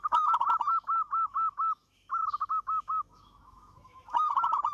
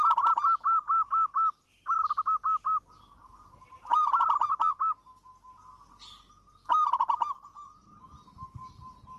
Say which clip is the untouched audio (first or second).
second